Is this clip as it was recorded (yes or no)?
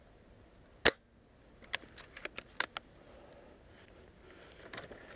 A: yes